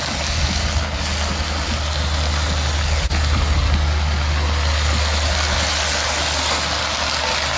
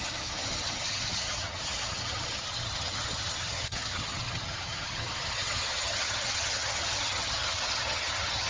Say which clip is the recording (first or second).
first